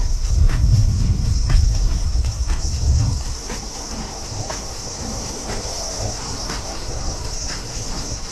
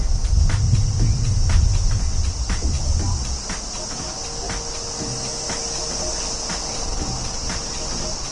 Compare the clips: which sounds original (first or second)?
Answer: second